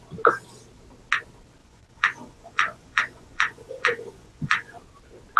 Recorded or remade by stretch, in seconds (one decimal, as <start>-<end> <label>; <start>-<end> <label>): 0.0-1.6 recorded; 1.6-4.8 remade; 4.8-5.4 recorded